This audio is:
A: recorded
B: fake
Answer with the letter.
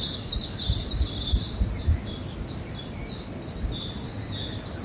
A